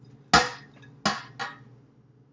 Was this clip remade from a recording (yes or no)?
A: no